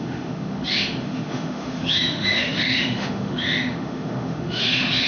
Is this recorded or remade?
remade